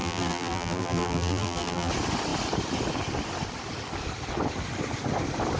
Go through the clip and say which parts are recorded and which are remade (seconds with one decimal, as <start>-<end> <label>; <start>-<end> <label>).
0.0-1.9 remade; 1.9-5.6 recorded